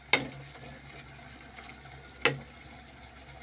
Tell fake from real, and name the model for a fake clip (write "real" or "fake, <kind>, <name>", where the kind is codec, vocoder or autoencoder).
real